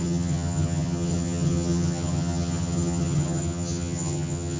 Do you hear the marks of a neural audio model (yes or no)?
yes